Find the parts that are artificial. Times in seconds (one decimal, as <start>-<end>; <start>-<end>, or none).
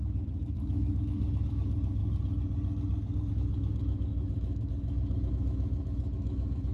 0.0-2.0; 3.3-6.7